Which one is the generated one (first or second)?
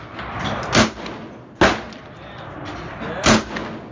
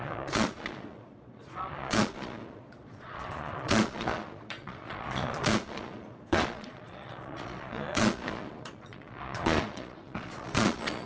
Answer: second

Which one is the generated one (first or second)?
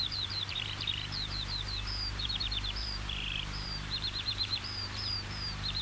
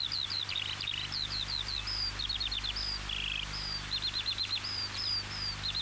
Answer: first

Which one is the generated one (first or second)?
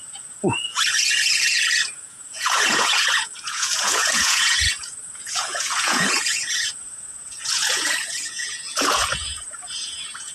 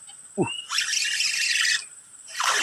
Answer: first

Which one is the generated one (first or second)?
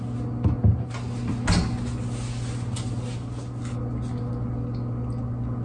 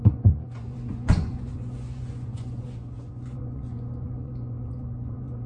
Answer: second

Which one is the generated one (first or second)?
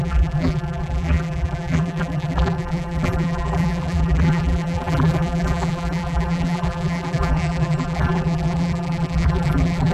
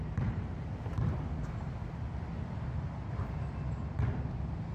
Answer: first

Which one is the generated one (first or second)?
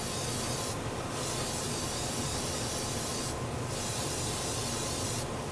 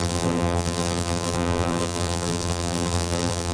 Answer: second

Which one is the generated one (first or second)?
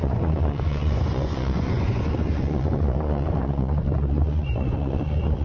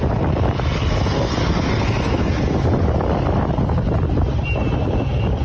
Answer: first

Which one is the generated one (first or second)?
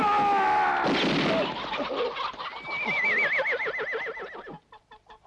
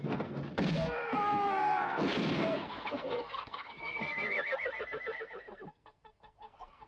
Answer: second